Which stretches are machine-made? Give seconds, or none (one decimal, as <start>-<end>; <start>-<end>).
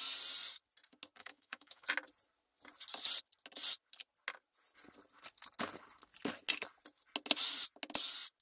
1.2-1.9